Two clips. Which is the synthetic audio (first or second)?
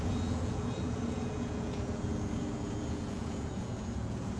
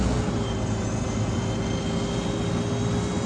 first